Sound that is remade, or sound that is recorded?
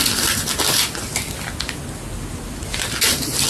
recorded